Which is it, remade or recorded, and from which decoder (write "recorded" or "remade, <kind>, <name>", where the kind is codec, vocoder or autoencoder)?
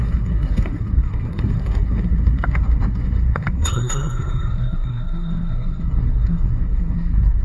remade, codec, SNAC